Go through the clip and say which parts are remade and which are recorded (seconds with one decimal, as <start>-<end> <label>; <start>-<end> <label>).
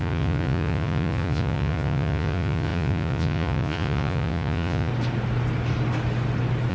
0.0-4.9 remade; 4.9-6.7 recorded